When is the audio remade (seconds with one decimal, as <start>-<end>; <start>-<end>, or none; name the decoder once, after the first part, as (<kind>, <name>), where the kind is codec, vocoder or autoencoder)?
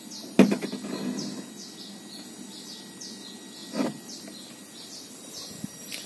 none